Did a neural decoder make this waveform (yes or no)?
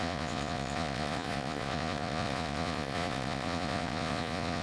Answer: yes